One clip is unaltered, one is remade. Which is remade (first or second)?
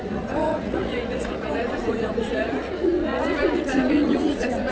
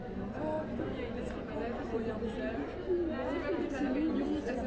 first